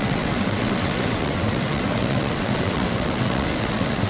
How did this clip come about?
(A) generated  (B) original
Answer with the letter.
A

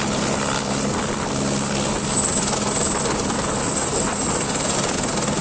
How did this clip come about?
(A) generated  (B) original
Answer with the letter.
B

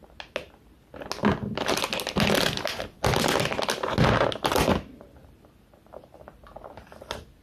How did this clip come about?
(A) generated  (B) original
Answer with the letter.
B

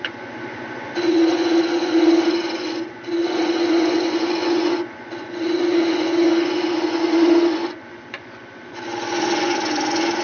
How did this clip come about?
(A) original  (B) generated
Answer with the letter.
B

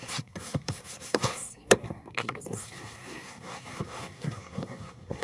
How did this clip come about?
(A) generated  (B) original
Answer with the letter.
A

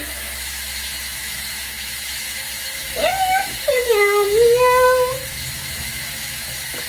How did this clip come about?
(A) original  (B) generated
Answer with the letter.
B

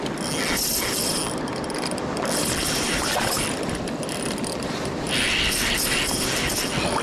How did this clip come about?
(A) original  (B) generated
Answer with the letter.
A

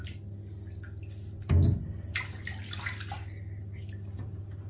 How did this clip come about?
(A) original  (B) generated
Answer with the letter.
A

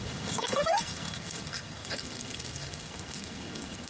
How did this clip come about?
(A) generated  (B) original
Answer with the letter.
A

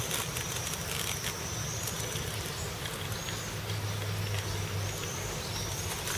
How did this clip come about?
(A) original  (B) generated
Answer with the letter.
A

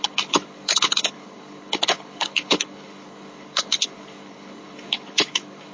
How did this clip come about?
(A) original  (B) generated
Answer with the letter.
B